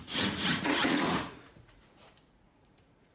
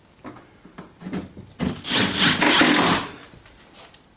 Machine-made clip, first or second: first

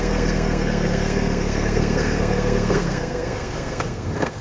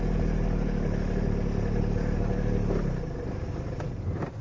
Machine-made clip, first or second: first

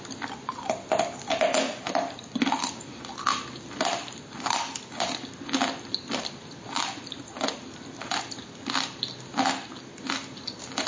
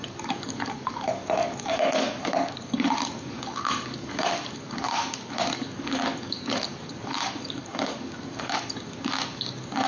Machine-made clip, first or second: second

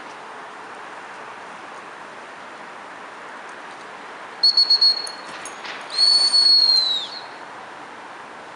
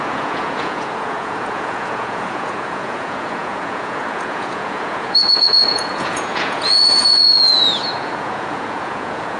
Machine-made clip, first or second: second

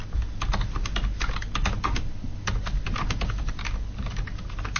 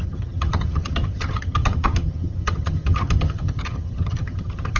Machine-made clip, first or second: second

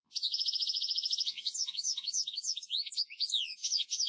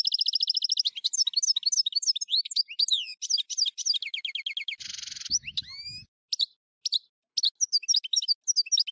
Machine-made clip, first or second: first